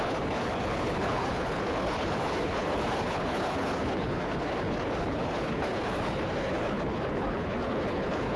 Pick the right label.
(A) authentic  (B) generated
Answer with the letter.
B